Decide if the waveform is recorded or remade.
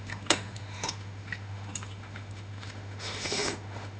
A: remade